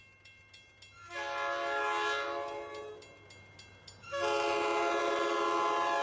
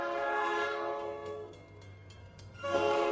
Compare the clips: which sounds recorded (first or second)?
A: first